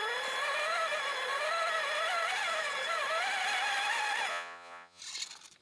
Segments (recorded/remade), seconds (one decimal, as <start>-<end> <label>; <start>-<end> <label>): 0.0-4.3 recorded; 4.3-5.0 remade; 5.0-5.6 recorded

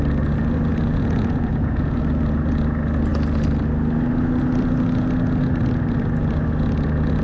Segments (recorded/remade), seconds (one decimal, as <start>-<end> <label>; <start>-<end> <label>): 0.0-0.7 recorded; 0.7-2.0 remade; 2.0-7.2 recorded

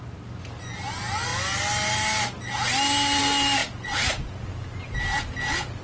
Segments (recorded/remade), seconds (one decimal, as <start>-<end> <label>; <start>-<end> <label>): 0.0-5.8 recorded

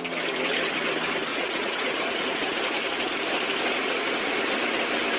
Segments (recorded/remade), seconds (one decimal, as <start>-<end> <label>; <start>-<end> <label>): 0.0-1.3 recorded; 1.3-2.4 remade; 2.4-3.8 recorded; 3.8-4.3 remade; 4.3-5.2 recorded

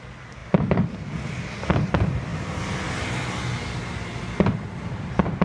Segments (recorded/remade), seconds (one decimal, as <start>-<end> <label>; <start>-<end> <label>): 0.0-5.4 recorded

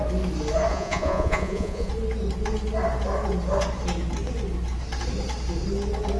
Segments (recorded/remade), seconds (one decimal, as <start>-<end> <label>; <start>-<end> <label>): 0.0-0.7 recorded; 0.7-1.9 remade; 1.9-6.2 recorded

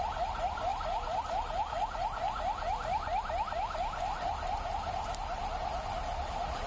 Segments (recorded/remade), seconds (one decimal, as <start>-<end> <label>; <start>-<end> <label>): 0.0-6.7 recorded

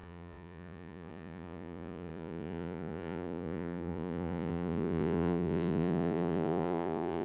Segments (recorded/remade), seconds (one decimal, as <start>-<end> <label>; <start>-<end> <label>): 0.0-7.2 remade